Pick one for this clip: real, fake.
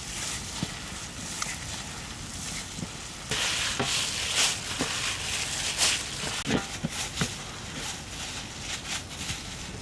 real